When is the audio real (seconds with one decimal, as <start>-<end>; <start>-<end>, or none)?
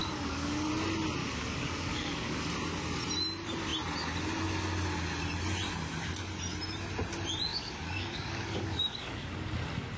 0.7-1.2; 2.5-7.5; 9.3-10.0